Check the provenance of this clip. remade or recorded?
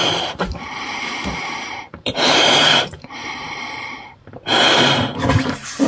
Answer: remade